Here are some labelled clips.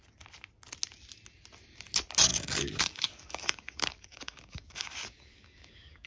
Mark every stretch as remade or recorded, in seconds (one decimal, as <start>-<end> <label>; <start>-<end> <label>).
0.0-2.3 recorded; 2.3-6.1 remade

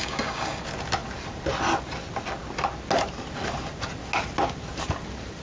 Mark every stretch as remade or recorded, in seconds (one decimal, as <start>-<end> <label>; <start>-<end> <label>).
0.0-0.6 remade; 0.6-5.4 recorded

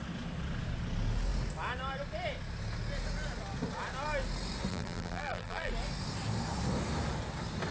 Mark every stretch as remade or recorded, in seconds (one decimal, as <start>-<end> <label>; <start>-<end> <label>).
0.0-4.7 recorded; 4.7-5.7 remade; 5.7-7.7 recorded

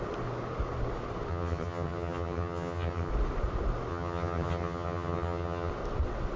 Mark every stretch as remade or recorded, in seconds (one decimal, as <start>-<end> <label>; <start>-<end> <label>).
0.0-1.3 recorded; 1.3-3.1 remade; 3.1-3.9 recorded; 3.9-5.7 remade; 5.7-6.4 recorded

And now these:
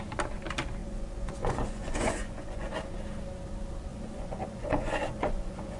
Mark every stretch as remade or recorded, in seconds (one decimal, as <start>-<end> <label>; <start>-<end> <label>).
0.0-0.8 recorded; 0.8-2.7 remade; 2.7-3.9 recorded; 3.9-5.8 remade

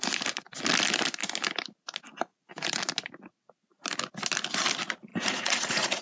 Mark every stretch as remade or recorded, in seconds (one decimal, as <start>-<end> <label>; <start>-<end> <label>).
0.0-2.3 recorded; 2.3-2.8 remade; 2.8-5.1 recorded; 5.1-6.0 remade